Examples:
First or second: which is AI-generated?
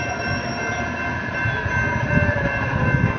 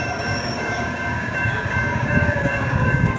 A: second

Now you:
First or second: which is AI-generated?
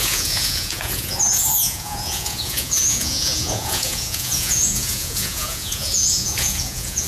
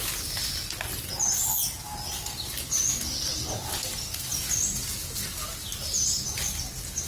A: first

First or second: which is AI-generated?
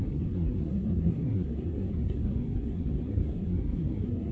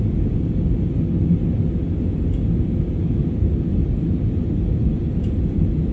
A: first